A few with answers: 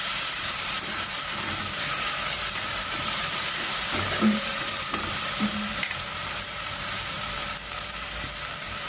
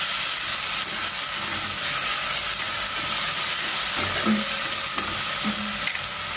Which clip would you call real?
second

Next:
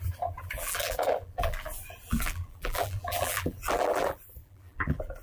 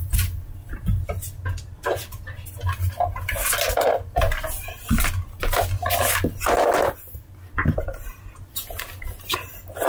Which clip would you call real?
second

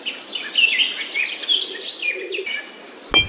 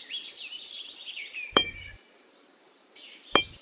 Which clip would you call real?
first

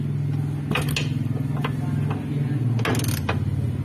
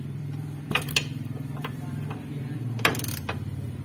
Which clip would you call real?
first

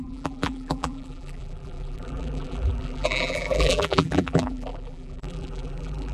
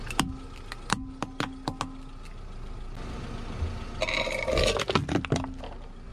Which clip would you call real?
second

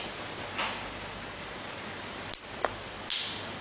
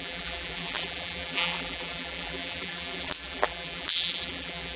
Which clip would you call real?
first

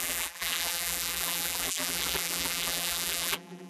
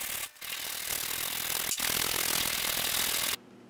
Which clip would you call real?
second